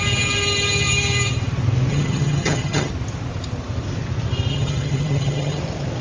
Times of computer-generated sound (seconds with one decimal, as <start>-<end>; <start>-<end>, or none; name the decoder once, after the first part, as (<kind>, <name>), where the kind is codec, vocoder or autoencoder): 1.9-2.9 (vocoder, HiFi-GAN); 4.5-5.6